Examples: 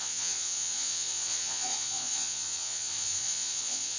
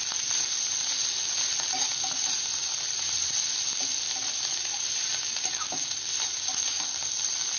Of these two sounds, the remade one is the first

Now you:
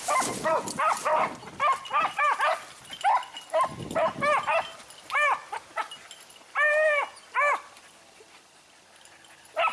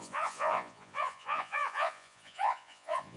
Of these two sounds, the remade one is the second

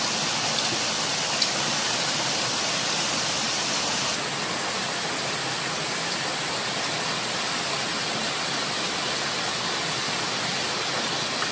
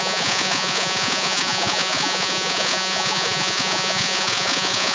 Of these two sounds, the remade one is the second